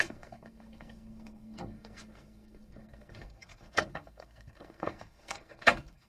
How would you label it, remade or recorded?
remade